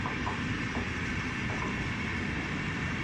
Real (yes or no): yes